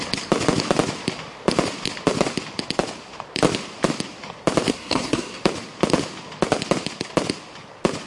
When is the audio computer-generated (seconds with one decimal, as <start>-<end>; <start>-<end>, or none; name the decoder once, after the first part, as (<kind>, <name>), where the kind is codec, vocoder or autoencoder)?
4.7-5.4 (codec, SNAC)